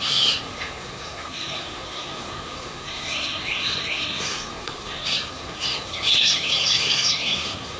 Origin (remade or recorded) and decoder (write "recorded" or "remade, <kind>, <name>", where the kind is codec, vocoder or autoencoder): remade, codec, SNAC